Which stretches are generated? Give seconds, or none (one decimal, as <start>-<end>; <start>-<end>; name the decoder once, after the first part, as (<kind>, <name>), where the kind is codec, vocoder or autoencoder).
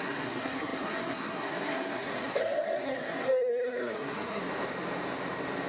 0.0-4.4 (codec, SNAC)